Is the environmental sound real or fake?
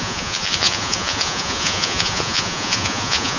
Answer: fake